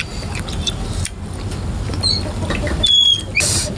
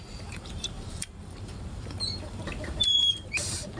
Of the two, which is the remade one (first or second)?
second